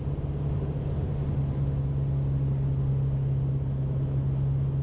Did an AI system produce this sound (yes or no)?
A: no